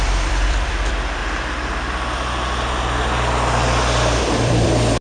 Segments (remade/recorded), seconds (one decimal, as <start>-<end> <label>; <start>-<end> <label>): 0.0-1.2 remade; 1.2-4.2 recorded; 4.2-5.0 remade